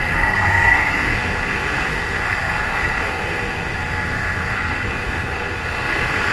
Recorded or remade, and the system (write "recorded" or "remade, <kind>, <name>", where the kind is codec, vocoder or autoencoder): remade, codec, SNAC